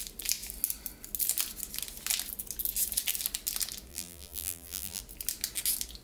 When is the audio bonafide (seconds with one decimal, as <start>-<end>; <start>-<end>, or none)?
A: 0.0-3.9; 5.0-6.0